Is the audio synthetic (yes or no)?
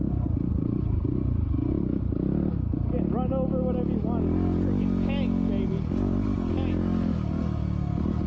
no